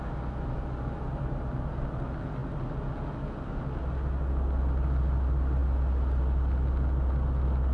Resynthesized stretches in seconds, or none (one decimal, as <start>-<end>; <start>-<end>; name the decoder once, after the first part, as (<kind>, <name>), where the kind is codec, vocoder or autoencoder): none